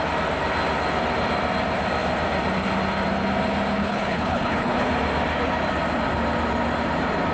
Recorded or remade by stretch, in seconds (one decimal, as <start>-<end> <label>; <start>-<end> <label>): 0.0-3.8 recorded; 3.8-4.9 remade; 4.9-7.3 recorded